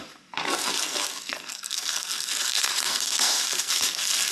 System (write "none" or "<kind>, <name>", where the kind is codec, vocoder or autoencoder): codec, SNAC